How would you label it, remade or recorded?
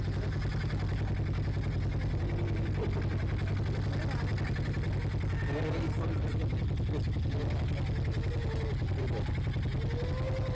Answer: recorded